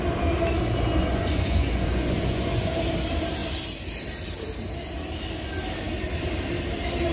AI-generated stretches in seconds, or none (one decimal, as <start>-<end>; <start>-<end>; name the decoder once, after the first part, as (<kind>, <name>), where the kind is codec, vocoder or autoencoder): 1.0-2.7 (vocoder, Vocos)